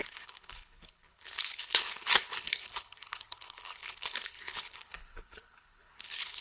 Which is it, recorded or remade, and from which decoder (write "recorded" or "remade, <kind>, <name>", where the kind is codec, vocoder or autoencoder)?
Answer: remade, codec, HILCodec